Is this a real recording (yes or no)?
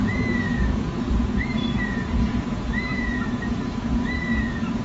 no